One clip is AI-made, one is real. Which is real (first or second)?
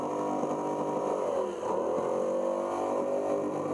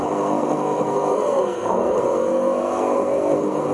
first